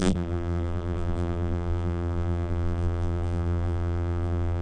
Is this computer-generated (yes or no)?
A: yes